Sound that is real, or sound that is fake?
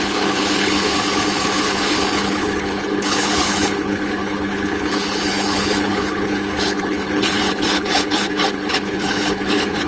fake